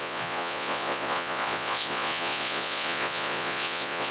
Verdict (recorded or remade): remade